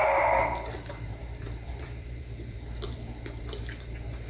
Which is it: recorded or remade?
remade